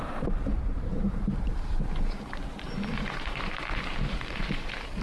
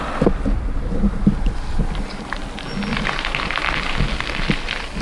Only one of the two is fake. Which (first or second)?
first